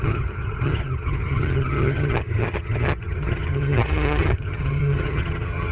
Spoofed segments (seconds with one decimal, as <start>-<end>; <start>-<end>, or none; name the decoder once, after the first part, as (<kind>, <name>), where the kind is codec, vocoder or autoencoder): 0.0-5.7 (vocoder, HiFi-GAN)